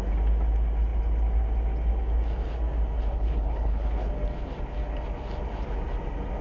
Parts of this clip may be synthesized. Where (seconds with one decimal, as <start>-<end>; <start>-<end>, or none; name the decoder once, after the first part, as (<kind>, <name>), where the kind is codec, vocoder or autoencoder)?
3.1-4.1 (codec, HILCodec)